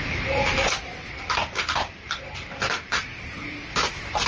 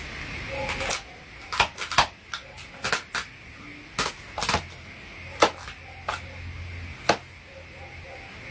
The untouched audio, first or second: second